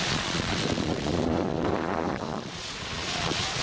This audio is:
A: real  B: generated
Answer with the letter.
B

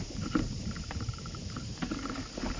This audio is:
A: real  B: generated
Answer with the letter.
B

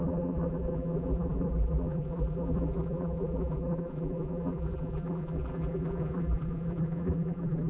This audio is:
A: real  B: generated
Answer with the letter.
B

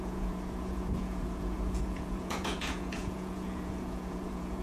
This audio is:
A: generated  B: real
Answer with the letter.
A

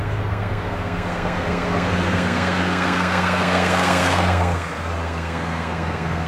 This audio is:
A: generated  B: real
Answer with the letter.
A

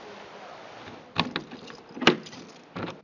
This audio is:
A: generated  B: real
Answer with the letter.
B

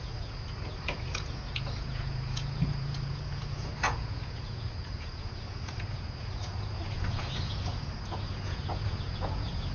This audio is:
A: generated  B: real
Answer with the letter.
A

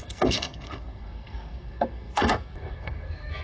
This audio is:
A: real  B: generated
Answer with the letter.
B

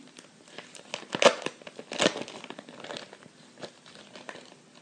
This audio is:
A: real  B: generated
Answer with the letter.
A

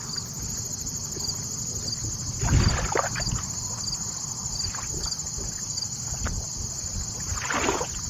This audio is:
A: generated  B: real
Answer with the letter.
B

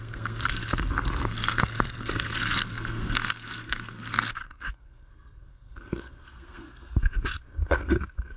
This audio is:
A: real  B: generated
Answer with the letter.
B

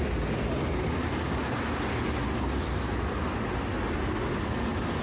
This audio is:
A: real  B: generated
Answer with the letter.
A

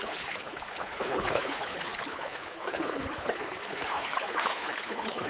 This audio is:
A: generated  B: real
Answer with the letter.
A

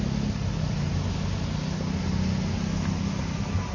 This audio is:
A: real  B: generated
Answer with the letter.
A